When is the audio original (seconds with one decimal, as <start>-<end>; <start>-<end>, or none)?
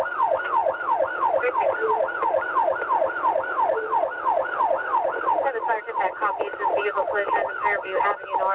0.0-8.5